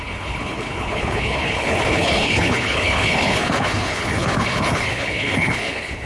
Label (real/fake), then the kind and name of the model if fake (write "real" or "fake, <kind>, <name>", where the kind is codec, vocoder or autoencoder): fake, codec, HILCodec